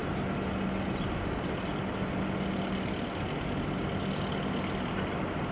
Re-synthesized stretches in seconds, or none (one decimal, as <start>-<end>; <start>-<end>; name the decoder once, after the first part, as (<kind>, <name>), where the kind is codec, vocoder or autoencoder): none